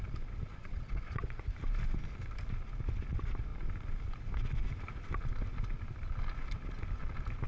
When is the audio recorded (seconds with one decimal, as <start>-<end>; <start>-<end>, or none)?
0.0-0.5; 1.4-7.5